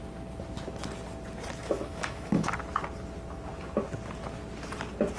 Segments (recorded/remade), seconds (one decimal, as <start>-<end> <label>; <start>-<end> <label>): 0.0-1.6 recorded; 1.6-2.5 remade; 2.5-5.2 recorded